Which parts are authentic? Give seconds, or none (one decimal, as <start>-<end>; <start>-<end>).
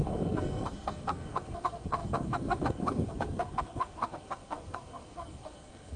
none